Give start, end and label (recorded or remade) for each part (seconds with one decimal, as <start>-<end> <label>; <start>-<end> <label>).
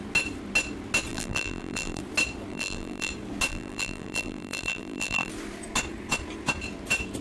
0.0-1.1 recorded; 1.1-2.0 remade; 2.0-2.5 recorded; 2.5-3.1 remade; 3.1-3.5 recorded; 3.5-5.3 remade; 5.3-7.2 recorded